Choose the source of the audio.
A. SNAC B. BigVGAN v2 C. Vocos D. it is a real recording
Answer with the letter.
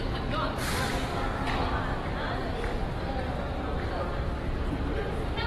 B